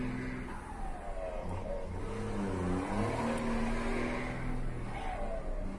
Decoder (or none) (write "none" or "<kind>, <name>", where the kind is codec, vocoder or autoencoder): none